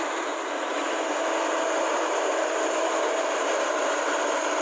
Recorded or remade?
recorded